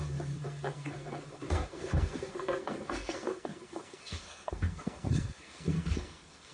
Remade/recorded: remade